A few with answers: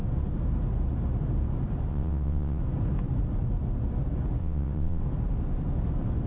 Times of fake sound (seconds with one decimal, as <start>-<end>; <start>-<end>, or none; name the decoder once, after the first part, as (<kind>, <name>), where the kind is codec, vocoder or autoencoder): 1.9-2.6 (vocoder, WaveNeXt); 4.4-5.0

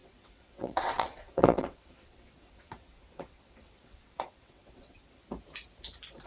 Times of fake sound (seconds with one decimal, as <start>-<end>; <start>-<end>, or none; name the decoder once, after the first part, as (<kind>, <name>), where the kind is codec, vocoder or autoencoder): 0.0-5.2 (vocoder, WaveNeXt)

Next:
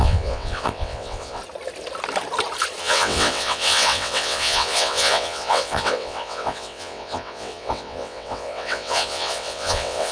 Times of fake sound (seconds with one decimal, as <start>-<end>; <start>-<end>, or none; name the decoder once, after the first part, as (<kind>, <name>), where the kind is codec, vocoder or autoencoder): 0.0-1.4 (vocoder, WaveNeXt); 2.8-10.1

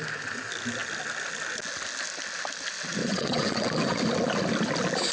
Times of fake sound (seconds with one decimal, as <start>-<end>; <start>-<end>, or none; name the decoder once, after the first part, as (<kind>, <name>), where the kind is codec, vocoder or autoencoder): 3.0-4.0 (vocoder, WaveNeXt)